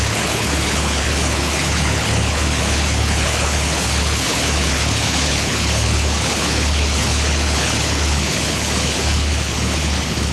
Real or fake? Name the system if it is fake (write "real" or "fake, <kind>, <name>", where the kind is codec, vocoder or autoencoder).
fake, codec, HILCodec